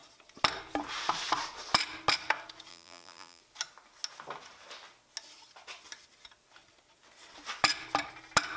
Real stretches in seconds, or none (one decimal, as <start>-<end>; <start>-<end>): 0.0-2.7; 3.4-8.6